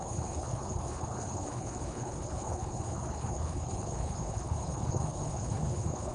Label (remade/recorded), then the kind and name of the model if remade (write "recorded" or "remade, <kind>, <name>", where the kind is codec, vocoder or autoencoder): remade, codec, HILCodec